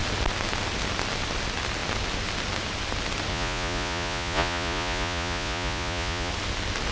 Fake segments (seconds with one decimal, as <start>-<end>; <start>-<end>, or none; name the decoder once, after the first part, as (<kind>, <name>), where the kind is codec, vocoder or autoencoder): 3.3-6.3 (vocoder, Vocos)